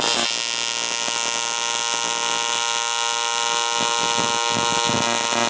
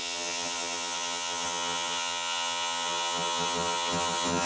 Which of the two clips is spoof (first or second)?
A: second